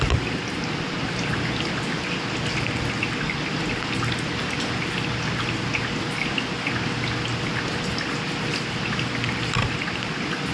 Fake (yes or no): no